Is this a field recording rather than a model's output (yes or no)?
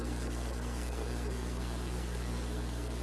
no